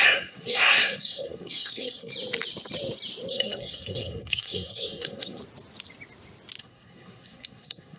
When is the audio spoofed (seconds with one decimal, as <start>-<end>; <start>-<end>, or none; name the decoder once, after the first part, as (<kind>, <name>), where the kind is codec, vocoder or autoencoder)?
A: 0.0-2.1 (codec, SNAC); 3.3-5.4; 6.6-8.0